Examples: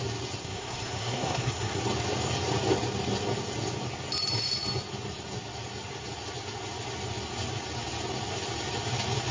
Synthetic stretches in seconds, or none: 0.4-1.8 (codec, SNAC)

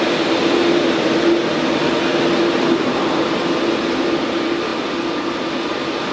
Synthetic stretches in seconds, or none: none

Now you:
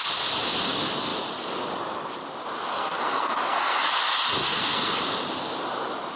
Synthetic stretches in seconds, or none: 2.7-3.9 (codec, SNAC); 4.4-5.0

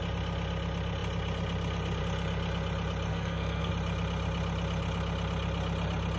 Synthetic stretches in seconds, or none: 3.1-3.7 (codec, SNAC)

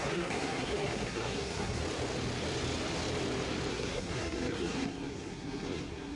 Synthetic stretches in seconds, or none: 0.0-1.8 (codec, SNAC); 3.7-6.2

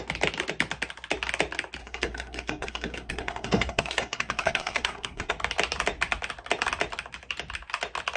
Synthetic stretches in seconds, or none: 1.8-5.3 (codec, SNAC)